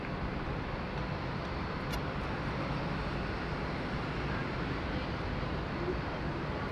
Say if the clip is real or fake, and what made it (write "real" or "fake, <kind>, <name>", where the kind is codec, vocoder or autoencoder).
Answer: real